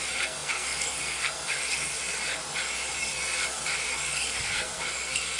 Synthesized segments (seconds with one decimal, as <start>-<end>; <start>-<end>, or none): 0.0-2.4; 3.0-5.4

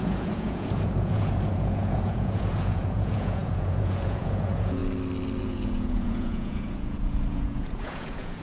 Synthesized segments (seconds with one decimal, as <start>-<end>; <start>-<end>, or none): 0.0-4.8; 5.4-8.4